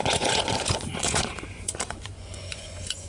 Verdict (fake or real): fake